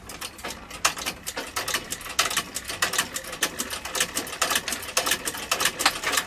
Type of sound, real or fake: real